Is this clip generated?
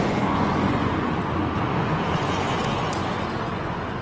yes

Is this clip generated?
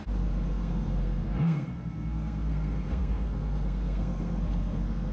yes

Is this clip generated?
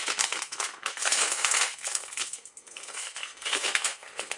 yes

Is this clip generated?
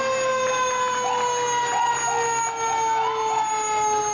no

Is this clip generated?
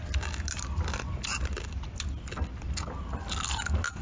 no